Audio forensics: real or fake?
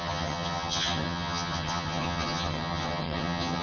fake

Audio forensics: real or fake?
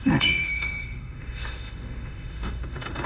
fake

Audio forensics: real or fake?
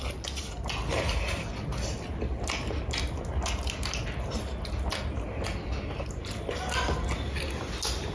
real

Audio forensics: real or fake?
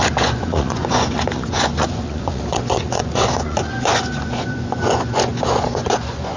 fake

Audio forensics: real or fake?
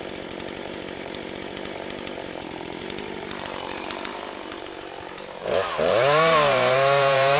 fake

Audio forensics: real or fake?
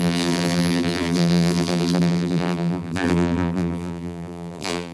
fake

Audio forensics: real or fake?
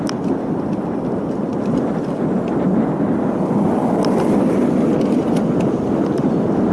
real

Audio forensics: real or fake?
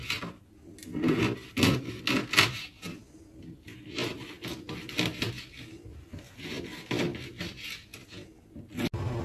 real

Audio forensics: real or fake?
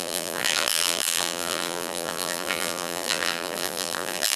fake